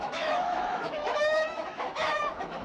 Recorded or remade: remade